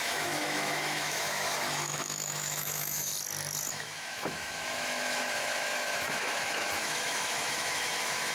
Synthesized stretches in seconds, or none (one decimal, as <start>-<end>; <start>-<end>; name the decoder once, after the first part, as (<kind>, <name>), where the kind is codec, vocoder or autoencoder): 0.0-3.1 (autoencoder, DAC-VAE); 3.7-8.3